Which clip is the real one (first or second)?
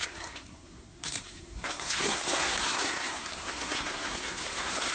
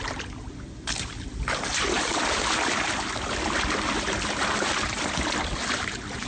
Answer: second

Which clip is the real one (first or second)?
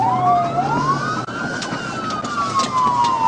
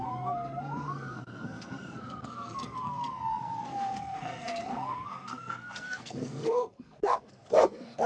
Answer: first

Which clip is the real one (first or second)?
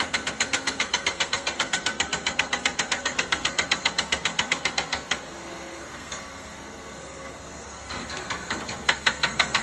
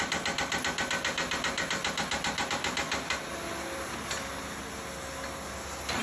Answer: second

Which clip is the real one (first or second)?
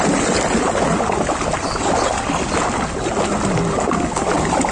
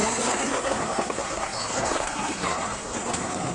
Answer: first